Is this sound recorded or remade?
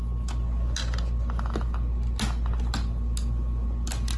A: recorded